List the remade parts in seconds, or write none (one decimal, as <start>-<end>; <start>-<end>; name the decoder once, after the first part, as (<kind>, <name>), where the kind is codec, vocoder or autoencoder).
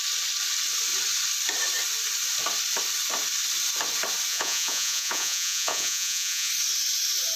4.3-6.5 (vocoder, Vocos)